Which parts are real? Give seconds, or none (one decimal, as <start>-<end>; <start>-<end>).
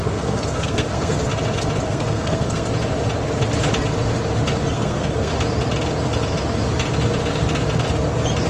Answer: 1.3-1.9; 2.7-4.7; 5.3-8.5